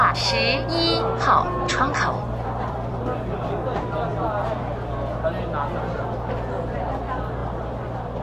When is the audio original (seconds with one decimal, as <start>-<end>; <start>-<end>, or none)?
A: 0.0-1.7; 3.0-4.1; 4.6-8.2